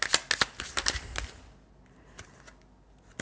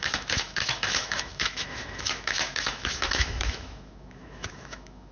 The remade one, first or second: second